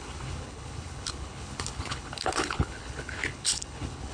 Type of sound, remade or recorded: remade